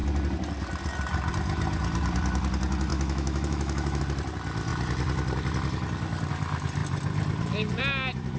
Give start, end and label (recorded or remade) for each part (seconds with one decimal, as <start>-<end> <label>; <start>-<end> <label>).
0.0-2.9 recorded; 2.9-4.0 remade; 4.0-8.4 recorded

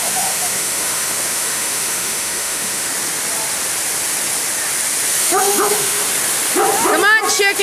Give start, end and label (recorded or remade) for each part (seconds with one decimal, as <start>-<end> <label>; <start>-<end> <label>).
0.0-2.9 remade; 2.9-5.2 recorded; 5.2-6.0 remade; 6.0-7.6 recorded

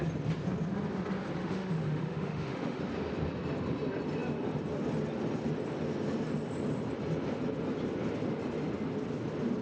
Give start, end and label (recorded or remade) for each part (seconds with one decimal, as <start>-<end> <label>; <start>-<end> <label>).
0.0-1.4 recorded; 1.4-2.8 remade; 2.8-9.6 recorded

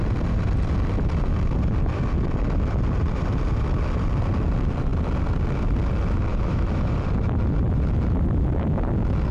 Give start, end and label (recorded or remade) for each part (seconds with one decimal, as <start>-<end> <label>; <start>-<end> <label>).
0.0-6.3 recorded; 6.3-6.9 remade; 6.9-9.3 recorded

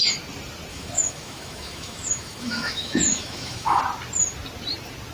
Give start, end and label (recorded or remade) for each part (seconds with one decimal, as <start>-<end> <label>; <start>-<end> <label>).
0.0-0.7 recorded; 0.7-3.8 remade; 3.8-5.1 recorded

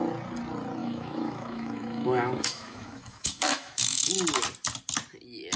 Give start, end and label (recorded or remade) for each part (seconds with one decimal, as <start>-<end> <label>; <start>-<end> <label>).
0.0-0.8 recorded; 0.8-4.1 remade; 4.1-5.6 recorded